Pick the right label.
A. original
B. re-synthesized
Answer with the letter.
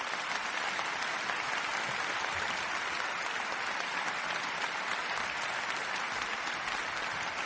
A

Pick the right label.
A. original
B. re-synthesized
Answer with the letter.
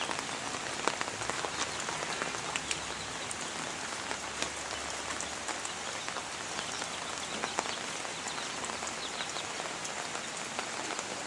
A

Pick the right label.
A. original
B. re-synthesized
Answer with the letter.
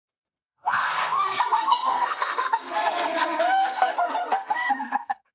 B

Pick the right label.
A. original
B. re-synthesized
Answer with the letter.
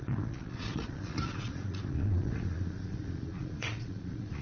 B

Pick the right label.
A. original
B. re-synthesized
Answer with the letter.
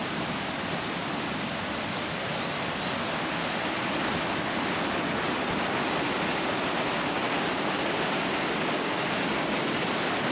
A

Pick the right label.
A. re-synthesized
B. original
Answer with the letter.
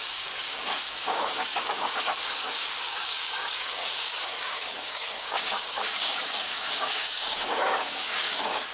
A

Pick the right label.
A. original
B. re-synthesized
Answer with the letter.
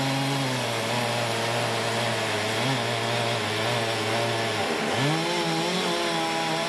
A